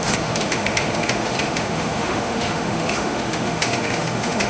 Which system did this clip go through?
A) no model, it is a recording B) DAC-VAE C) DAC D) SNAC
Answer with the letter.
B